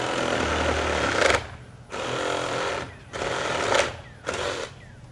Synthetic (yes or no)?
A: no